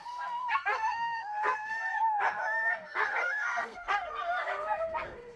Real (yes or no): no